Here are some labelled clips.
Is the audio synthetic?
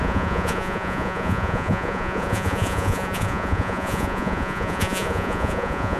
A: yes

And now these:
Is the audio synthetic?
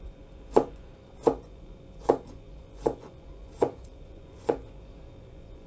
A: yes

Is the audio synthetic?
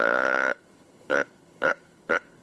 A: yes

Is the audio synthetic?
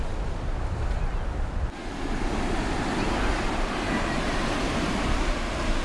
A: no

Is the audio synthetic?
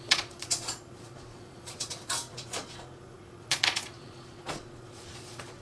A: yes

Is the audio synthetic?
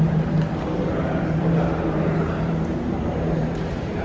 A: yes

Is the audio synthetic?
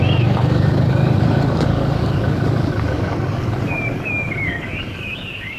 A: yes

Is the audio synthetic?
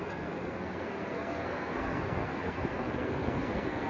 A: yes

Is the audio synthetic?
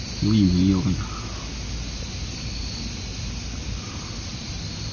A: no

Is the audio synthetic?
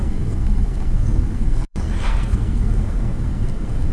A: yes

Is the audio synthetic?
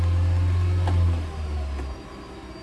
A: no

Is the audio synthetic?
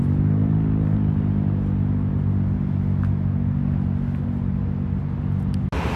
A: no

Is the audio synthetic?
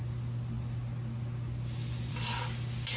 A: no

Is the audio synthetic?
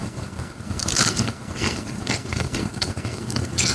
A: yes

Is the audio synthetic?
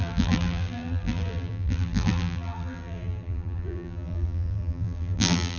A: yes